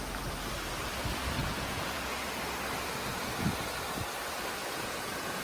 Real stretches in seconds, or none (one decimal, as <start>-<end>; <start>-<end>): 0.0-1.4; 2.3-4.6